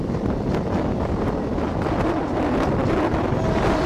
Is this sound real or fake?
real